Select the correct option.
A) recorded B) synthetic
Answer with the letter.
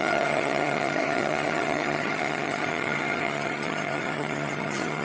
B